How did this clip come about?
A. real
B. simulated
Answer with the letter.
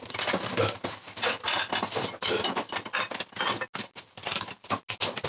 A